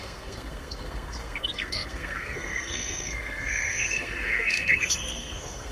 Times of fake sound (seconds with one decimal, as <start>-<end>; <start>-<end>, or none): 0.0-5.7